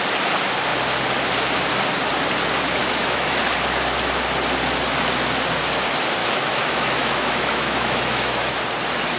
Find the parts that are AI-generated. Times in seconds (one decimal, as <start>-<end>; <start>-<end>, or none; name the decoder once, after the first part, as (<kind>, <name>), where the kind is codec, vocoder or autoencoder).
2.8-3.4 (autoencoder, DAC-VAE); 6.2-8.6